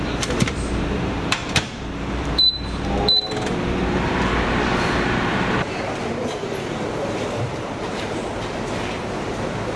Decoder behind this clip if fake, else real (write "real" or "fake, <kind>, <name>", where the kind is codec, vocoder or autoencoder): fake, vocoder, BigVGAN v2